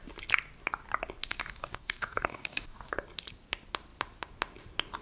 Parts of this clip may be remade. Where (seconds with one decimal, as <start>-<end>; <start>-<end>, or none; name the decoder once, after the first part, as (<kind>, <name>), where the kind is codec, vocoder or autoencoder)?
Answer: 1.3-2.9 (codec, DAC)